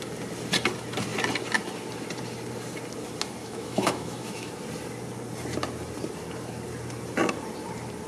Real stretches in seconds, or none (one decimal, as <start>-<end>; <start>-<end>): 0.0-3.4; 4.5-8.1